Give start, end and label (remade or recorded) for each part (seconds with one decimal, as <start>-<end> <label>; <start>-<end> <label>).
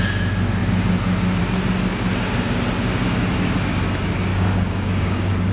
0.0-4.3 recorded; 4.3-5.5 remade